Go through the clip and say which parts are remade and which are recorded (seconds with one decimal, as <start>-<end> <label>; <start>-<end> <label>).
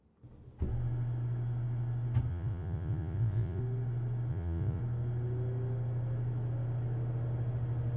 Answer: 0.0-2.3 recorded; 2.3-3.6 remade; 3.6-4.3 recorded; 4.3-4.8 remade; 4.8-8.0 recorded